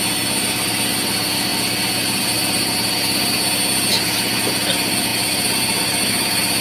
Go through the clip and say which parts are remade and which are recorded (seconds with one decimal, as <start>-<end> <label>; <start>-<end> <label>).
0.0-6.6 recorded